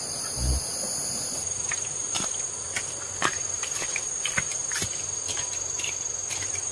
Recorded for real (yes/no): yes